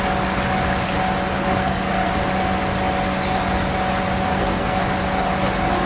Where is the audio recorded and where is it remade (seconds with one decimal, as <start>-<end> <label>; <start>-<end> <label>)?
0.0-1.4 recorded; 1.4-2.1 remade; 2.1-4.3 recorded; 4.3-4.8 remade; 4.8-5.9 recorded